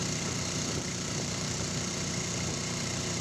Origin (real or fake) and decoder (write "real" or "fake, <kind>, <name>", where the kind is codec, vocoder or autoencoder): fake, vocoder, BigVGAN v2